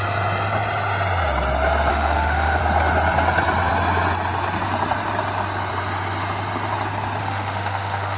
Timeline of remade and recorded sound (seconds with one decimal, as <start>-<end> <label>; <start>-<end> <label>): 0.0-1.9 recorded; 1.9-2.6 remade; 2.6-7.2 recorded; 7.2-8.2 remade